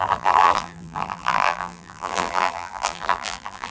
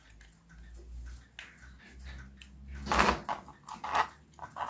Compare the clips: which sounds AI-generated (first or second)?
first